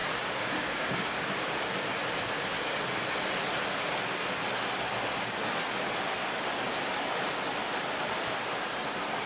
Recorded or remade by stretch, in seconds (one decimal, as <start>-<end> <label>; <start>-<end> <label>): 0.0-1.4 remade; 1.4-9.3 recorded